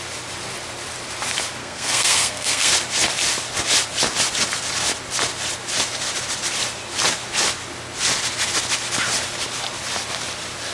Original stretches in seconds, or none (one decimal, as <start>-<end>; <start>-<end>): 0.0-1.6; 2.7-10.7